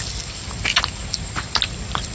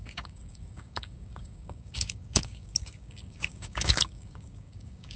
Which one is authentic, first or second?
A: first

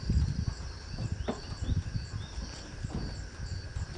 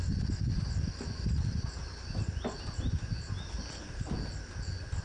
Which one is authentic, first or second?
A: second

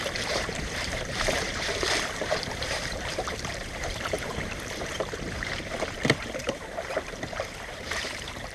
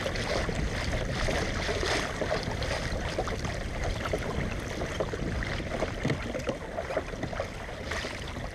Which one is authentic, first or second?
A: second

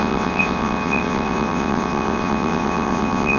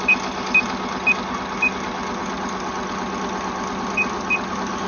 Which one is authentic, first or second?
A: second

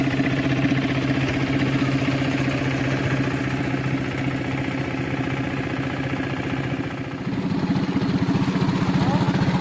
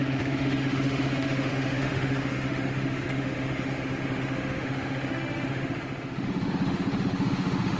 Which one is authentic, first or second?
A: first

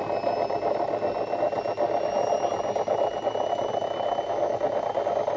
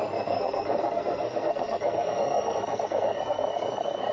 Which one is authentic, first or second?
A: first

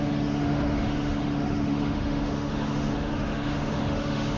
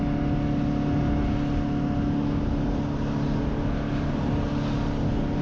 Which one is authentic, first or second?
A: second